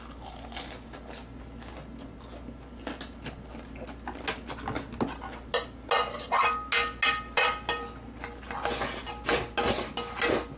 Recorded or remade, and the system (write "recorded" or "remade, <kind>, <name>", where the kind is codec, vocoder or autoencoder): recorded